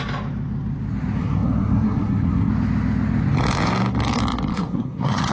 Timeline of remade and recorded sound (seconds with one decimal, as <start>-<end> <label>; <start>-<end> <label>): 0.0-1.2 recorded; 1.2-2.5 remade; 2.5-4.5 recorded; 4.5-5.3 remade